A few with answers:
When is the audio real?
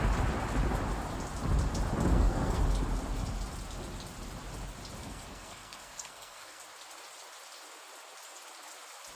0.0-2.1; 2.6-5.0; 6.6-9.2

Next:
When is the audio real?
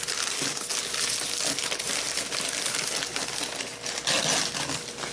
0.0-5.1